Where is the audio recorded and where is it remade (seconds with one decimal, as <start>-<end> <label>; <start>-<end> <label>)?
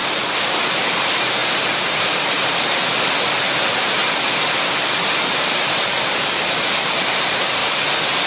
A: 0.0-0.7 recorded; 0.7-4.0 remade; 4.0-5.3 recorded; 5.3-7.6 remade; 7.6-8.3 recorded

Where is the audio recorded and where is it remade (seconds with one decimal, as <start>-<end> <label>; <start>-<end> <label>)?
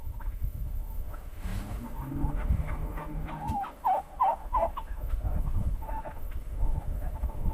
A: 0.0-7.5 remade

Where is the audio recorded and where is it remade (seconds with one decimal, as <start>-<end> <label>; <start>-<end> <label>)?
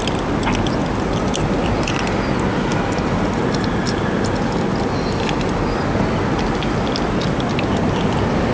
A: 0.0-8.5 recorded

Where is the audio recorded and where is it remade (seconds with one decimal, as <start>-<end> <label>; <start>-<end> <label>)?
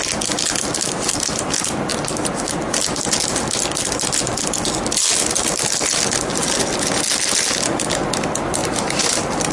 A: 0.0-8.6 recorded; 8.6-9.5 remade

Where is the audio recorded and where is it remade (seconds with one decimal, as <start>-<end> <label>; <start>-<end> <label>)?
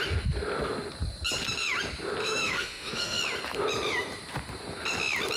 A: 0.0-2.2 recorded; 2.2-3.2 remade; 3.2-5.4 recorded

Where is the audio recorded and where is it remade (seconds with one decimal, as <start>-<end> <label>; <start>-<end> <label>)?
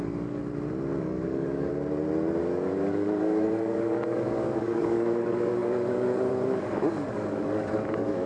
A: 0.0-0.4 remade; 0.4-1.0 recorded; 1.0-1.7 remade; 1.7-2.4 recorded; 2.4-8.3 remade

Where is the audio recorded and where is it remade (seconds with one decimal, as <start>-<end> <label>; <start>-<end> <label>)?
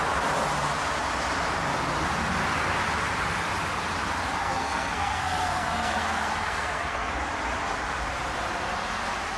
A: 0.0-4.4 recorded; 4.4-7.1 remade; 7.1-9.4 recorded